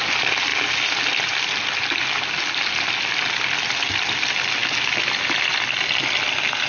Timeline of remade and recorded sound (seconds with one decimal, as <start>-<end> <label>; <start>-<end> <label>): 0.0-6.7 recorded